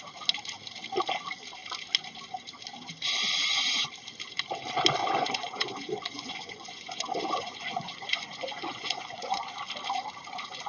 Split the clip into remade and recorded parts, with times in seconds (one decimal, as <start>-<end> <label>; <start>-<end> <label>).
0.0-5.0 recorded; 5.0-9.4 remade; 9.4-10.7 recorded